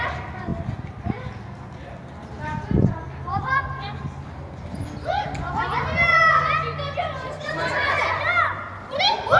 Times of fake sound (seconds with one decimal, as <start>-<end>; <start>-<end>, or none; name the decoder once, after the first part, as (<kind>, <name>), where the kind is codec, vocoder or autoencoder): 7.0-8.0 (vocoder, BigVGAN v2)